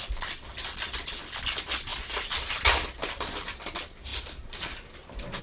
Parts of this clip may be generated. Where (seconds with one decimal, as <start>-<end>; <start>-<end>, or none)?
1.9-3.6; 4.1-5.4

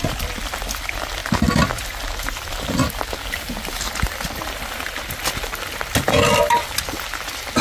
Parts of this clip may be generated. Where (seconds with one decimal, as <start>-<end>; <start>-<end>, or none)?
0.0-1.2; 1.8-2.8

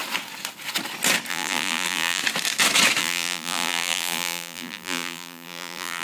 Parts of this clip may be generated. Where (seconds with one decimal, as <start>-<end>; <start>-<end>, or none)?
1.3-2.2; 3.0-6.0

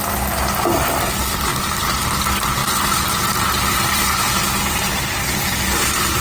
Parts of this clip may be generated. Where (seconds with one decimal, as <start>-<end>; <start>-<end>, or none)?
2.6-6.2

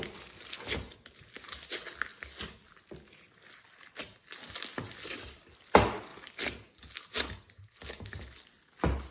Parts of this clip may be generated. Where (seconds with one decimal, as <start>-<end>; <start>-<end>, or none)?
none